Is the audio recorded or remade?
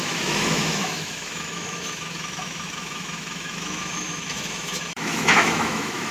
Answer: remade